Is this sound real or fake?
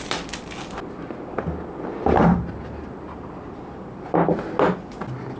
real